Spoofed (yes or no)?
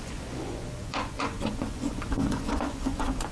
yes